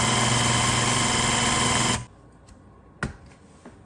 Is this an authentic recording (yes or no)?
yes